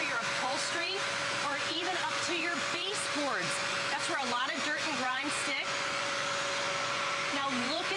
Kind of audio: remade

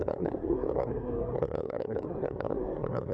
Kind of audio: remade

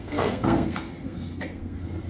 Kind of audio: remade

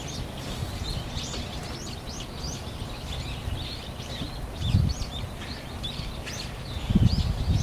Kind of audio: recorded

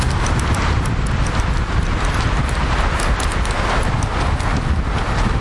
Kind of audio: recorded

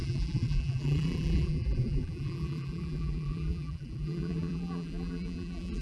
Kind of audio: remade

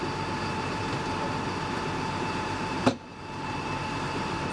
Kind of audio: remade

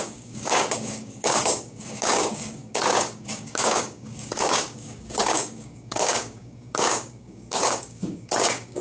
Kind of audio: remade